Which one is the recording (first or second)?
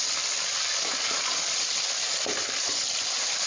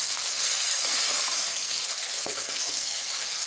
first